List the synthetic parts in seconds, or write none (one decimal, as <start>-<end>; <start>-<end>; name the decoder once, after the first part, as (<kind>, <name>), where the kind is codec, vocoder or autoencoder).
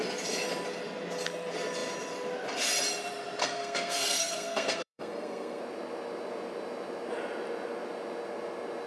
3.4-5.6 (codec, SNAC)